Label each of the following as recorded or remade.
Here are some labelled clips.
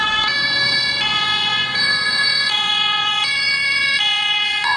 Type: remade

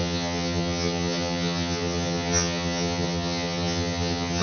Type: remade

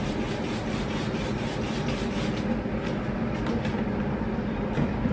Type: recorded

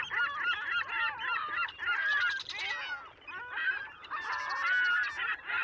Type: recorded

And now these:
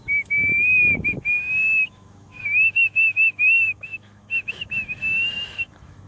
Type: remade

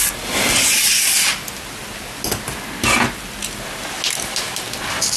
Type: recorded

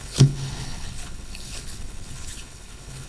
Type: remade